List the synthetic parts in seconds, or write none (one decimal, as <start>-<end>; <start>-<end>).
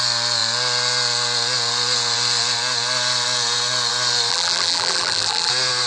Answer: 4.3-5.5